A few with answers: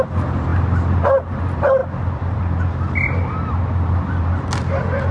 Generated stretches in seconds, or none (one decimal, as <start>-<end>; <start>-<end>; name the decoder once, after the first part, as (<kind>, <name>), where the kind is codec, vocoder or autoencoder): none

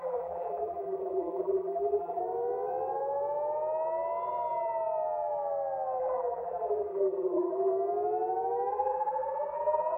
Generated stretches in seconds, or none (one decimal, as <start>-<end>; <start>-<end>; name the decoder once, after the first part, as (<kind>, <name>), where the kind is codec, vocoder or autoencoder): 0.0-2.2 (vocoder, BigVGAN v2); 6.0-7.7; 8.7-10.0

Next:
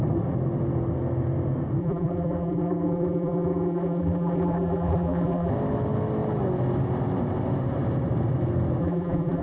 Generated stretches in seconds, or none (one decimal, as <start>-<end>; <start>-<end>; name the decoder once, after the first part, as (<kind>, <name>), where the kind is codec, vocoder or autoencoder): 1.8-5.5 (vocoder, BigVGAN v2); 8.8-9.4